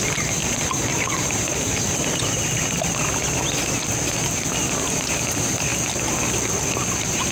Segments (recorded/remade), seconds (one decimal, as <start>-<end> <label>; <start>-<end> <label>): 0.0-5.7 recorded; 5.7-6.4 remade; 6.4-7.3 recorded